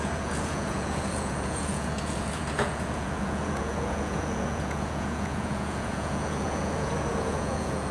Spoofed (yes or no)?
yes